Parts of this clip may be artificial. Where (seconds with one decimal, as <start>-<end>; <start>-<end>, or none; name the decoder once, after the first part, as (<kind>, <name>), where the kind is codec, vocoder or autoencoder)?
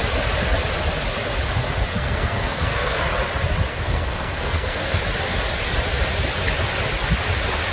1.9-3.0 (codec, SNAC); 3.7-5.0